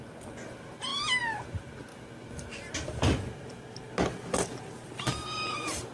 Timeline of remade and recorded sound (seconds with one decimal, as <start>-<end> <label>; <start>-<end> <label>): 0.0-5.9 recorded